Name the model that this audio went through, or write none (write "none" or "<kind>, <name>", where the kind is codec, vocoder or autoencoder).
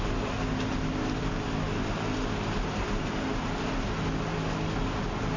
none